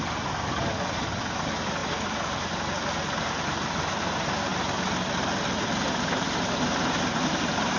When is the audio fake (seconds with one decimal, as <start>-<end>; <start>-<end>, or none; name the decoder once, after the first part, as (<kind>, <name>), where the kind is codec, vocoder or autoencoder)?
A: none